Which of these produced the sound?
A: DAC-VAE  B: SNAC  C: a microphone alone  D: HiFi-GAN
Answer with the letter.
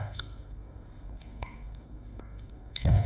B